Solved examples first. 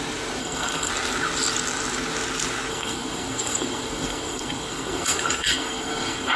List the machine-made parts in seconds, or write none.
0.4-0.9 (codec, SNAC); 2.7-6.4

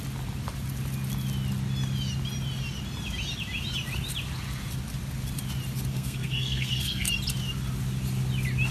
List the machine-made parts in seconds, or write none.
5.9-7.1 (codec, SNAC)

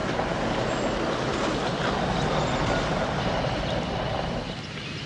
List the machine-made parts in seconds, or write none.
none

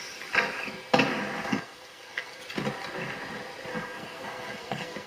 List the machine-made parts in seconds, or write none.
1.5-2.4 (codec, SNAC); 3.7-5.1

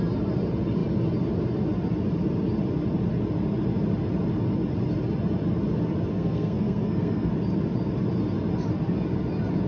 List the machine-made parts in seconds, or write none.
6.1-7.3 (codec, SNAC)

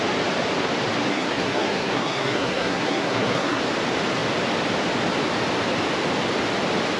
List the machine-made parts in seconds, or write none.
1.1-3.6 (codec, SNAC)

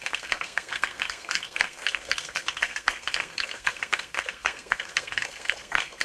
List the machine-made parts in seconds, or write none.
0.0-6.0 (codec, SNAC)